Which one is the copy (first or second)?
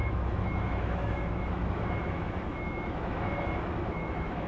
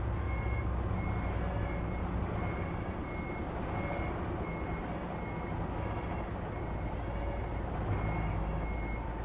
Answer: first